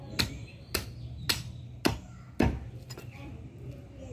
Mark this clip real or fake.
real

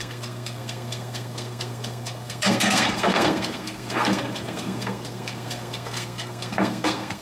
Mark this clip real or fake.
fake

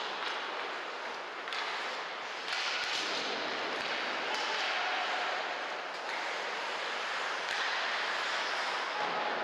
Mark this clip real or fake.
real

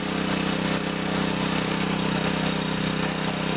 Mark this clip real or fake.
real